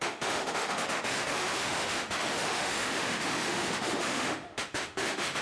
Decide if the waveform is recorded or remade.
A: remade